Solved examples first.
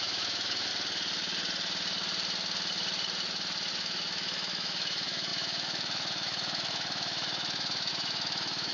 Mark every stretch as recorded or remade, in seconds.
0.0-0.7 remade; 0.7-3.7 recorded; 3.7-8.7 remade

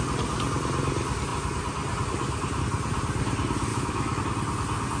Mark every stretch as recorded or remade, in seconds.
0.0-3.7 recorded; 3.7-4.2 remade; 4.2-5.0 recorded

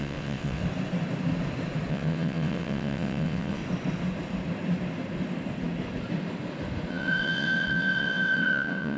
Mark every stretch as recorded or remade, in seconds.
0.0-0.6 remade; 0.6-1.9 recorded; 1.9-3.6 remade; 3.6-6.9 recorded; 6.9-9.0 remade

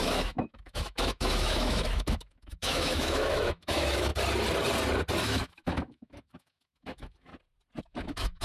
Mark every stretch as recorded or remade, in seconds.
0.0-4.1 remade; 4.1-5.2 recorded; 5.2-7.3 remade; 7.3-7.8 recorded; 7.8-8.4 remade

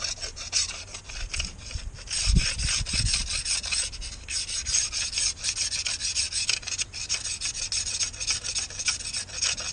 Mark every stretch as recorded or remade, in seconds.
0.0-9.7 recorded

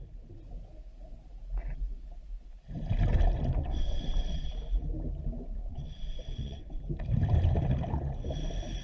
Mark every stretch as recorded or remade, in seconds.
0.0-3.6 recorded; 3.6-4.5 remade; 4.5-5.7 recorded; 5.7-6.8 remade; 6.8-8.8 recorded